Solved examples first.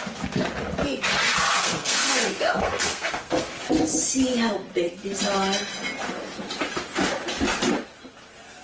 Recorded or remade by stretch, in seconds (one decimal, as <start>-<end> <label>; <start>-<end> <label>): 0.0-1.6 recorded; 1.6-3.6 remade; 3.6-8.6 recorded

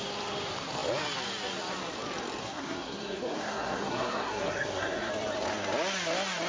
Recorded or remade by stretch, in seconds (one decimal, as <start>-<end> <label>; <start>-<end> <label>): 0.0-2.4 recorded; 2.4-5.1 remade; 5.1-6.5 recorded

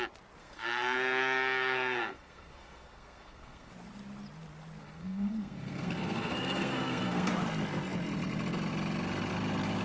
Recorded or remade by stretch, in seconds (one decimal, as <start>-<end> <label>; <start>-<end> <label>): 0.0-0.4 recorded; 0.4-3.7 remade; 3.7-4.8 recorded; 4.8-7.3 remade; 7.3-9.8 recorded